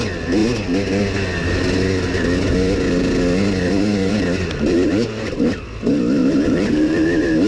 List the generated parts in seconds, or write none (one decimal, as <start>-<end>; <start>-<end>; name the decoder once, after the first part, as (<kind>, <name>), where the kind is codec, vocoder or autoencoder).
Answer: 6.2-7.5 (vocoder, BigVGAN v2)